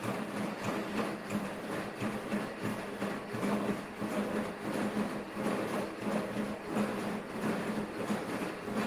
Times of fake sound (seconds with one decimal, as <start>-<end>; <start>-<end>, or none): 1.2-2.3